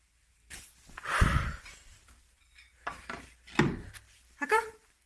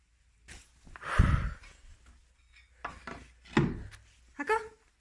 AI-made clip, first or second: first